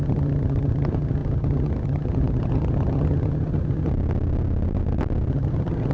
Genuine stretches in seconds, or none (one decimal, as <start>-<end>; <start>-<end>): 3.9-5.3